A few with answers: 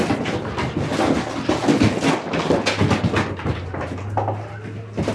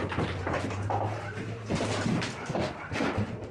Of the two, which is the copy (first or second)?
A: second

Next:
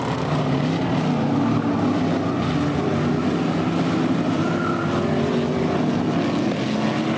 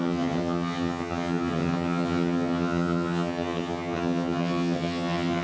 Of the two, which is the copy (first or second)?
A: second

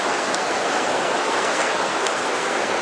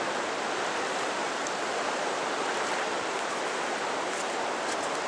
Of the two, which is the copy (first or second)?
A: first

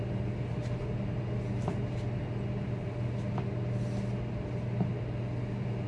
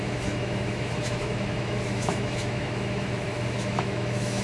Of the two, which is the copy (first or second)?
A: second